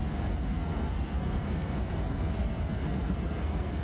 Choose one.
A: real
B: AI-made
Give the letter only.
B